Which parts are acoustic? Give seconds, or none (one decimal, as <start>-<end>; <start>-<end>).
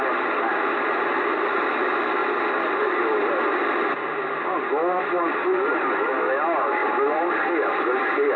0.0-8.4